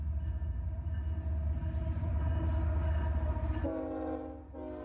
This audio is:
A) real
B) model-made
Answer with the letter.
A